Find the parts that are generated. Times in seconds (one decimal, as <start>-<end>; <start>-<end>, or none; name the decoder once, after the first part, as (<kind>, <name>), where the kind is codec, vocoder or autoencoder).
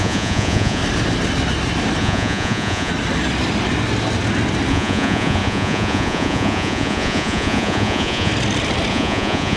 0.0-0.8 (vocoder, Vocos); 2.0-2.9; 4.7-8.3; 8.9-9.6